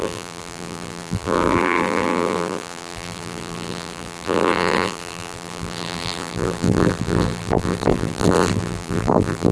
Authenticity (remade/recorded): remade